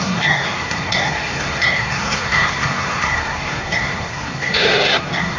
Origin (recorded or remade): remade